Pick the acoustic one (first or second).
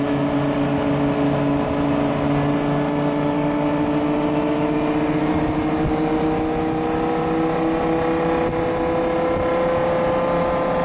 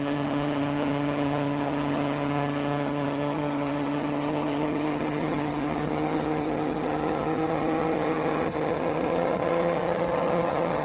first